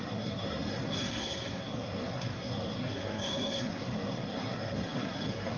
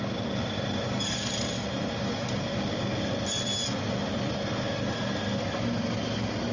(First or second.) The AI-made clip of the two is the first